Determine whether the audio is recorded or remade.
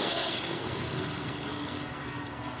remade